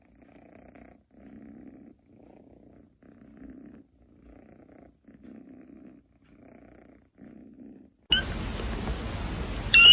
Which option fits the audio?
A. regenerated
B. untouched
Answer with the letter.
B